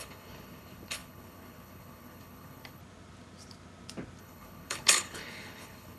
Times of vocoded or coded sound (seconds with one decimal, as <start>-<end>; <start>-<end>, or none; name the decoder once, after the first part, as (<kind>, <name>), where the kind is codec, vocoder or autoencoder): 0.0-2.8 (codec, HILCodec); 4.2-6.0